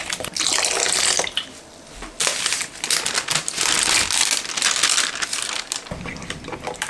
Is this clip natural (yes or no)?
yes